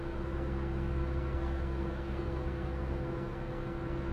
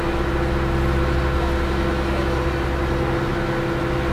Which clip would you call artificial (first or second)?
first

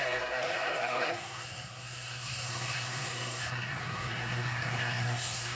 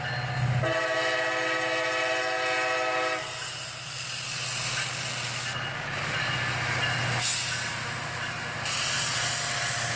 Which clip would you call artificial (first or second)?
first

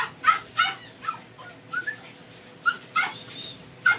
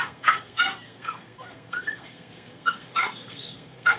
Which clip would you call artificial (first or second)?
second